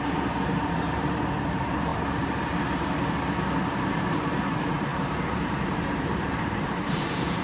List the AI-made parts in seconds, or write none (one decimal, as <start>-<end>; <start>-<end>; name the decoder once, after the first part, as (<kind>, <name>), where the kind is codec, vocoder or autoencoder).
0.0-1.9 (vocoder, BigVGAN v2); 3.6-7.4